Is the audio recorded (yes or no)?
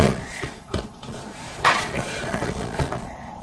no